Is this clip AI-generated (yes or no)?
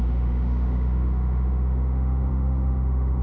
yes